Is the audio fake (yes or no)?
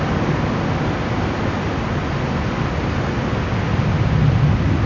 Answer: no